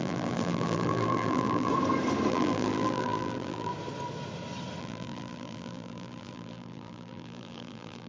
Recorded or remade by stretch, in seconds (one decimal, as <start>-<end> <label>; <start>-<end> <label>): 0.0-1.7 remade; 1.7-2.3 recorded; 2.3-3.7 remade; 3.7-4.8 recorded; 4.8-8.1 remade